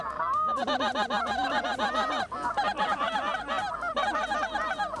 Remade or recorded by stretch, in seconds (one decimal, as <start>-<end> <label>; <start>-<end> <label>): 0.0-5.0 recorded